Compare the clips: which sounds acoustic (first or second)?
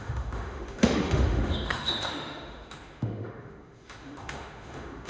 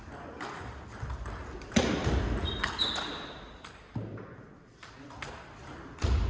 second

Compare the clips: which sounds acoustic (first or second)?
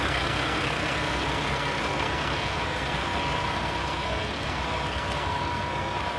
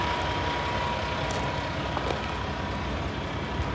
second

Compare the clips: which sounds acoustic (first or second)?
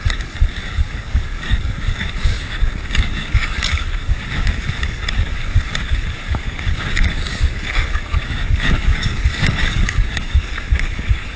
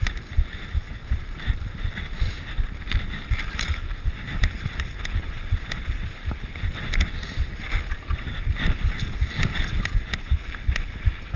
second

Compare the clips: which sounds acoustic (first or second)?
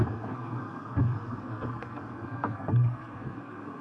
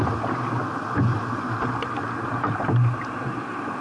second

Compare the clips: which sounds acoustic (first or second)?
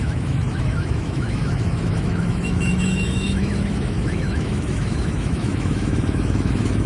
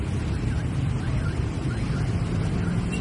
second